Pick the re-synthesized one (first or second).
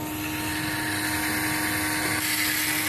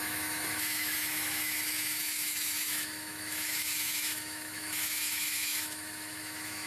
second